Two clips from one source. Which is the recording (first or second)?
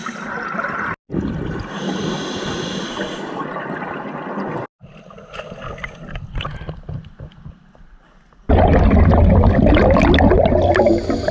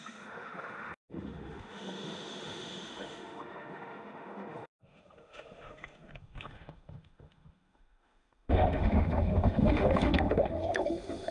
first